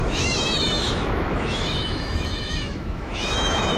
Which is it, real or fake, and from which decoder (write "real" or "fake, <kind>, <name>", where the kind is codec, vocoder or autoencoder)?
fake, autoencoder, DAC-VAE